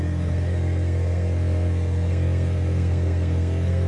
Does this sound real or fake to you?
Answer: fake